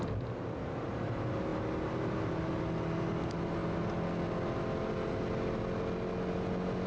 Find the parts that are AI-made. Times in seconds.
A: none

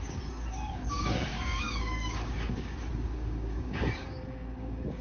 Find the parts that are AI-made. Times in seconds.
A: 0.0-5.0 (codec, DAC)

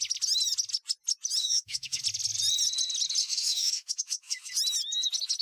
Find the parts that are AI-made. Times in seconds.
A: 1.4-2.0 (autoencoder, DAC-VAE); 3.2-4.5

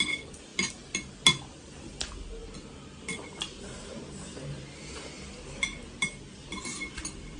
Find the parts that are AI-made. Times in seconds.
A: 0.0-0.5 (vocoder, BigVGAN v2); 1.6-2.4; 6.8-7.4